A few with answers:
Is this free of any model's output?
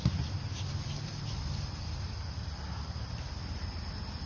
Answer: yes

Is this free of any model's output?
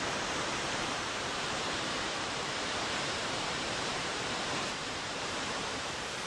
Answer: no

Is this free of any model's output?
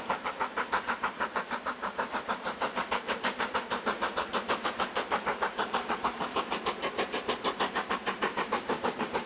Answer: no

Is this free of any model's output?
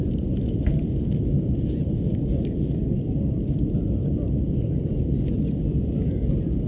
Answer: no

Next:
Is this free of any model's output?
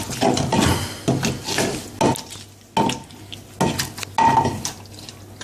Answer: yes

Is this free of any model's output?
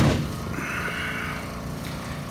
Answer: yes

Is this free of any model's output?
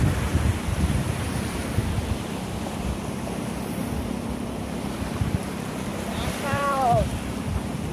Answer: no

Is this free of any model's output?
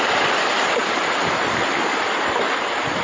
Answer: yes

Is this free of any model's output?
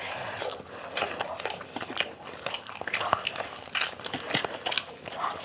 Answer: yes